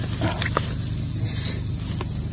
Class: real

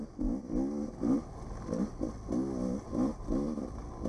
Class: real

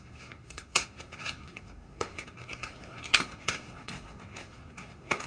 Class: fake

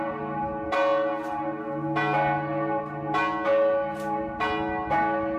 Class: real